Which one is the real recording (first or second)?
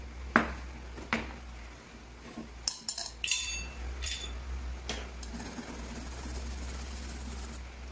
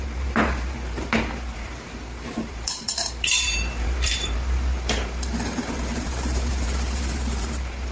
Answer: first